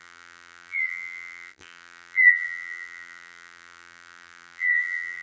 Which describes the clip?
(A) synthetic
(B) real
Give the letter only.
A